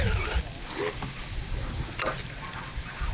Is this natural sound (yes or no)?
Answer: yes